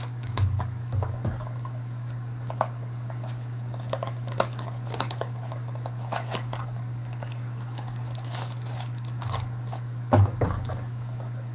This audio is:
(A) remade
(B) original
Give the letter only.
A